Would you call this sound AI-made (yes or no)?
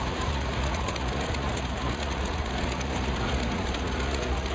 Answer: yes